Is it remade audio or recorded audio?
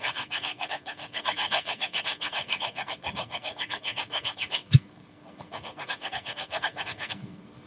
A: remade